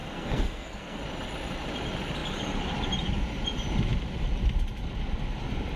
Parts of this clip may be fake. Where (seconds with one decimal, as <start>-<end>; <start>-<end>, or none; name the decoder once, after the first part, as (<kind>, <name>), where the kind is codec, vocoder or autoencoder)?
0.0-1.0 (codec, SNAC)